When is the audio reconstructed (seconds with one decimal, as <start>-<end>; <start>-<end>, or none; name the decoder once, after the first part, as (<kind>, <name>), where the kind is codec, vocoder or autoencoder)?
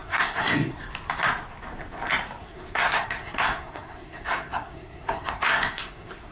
0.0-0.8 (codec, SNAC); 2.4-6.3